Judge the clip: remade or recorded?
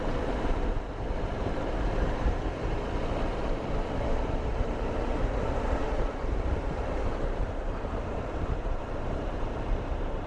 remade